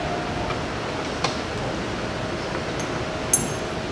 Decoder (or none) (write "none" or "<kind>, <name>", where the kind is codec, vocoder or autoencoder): none